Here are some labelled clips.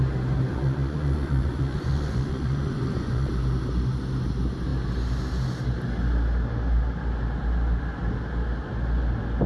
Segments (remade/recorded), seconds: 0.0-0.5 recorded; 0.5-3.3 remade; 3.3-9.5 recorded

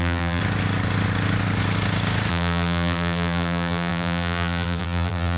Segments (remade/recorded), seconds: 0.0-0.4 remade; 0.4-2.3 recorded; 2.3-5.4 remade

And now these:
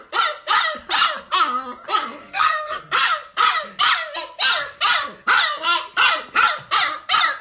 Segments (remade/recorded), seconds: 0.0-2.2 recorded; 2.2-2.8 remade; 2.8-7.4 recorded